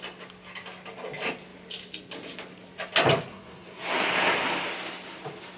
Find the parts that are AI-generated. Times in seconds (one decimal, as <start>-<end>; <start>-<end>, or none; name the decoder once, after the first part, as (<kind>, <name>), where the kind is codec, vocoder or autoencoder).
3.3-4.1 (codec, SNAC)